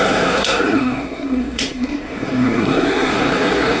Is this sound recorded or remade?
remade